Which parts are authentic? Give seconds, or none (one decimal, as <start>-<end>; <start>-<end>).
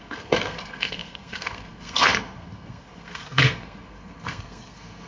none